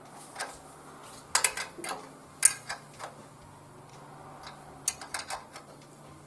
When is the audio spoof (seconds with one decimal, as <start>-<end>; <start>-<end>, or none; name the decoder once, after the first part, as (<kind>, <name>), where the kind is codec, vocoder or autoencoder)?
none